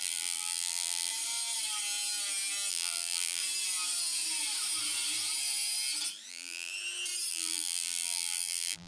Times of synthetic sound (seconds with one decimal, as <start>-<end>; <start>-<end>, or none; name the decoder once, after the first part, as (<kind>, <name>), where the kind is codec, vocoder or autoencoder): 0.0-1.1 (vocoder, BigVGAN v2); 2.7-3.4; 6.3-6.7; 7.3-8.9